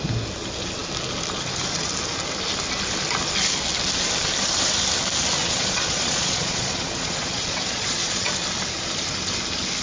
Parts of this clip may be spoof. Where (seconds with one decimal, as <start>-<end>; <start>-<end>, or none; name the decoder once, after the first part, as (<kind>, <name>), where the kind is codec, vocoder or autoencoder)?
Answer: 5.4-8.3 (vocoder, Vocos)